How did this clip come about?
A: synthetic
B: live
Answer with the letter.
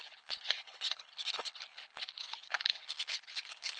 A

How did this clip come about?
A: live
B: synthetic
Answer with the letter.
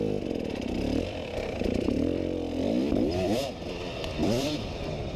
B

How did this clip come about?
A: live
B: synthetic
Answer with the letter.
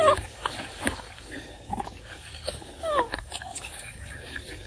B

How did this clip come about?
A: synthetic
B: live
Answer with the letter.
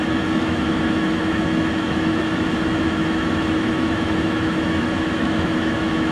A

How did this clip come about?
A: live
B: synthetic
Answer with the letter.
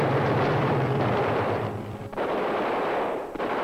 B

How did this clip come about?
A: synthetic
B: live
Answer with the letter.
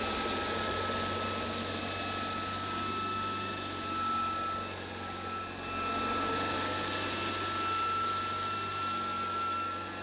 B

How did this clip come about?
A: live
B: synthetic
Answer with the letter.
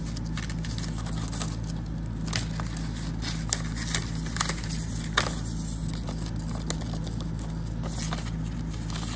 A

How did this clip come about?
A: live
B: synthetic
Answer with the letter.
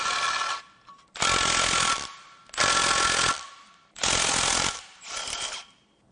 A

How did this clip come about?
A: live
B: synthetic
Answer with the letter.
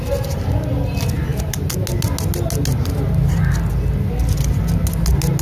A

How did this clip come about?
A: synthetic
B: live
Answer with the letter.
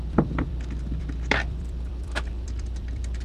A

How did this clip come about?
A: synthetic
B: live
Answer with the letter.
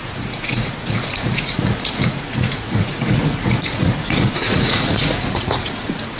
A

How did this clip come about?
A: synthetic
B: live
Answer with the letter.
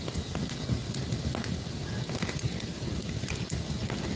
B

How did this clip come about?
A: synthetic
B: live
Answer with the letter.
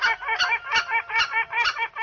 B